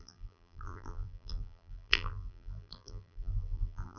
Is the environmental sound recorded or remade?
remade